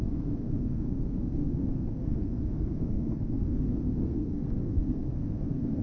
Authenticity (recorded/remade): remade